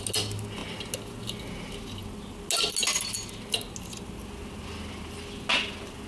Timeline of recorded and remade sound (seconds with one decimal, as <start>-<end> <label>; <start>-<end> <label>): 0.0-6.1 recorded